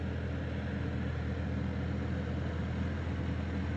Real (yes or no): yes